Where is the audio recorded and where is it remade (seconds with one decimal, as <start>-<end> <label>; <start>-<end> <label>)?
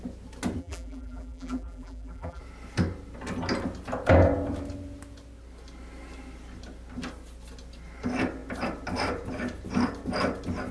0.0-0.6 recorded; 0.6-2.4 remade; 2.4-10.7 recorded